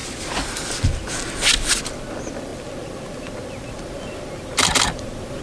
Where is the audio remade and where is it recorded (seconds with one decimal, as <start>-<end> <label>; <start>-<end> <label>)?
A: 0.0-5.4 recorded